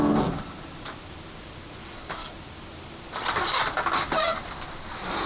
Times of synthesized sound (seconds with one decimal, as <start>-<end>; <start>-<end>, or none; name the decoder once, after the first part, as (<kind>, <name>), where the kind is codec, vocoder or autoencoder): 1.8-2.3 (codec, DAC)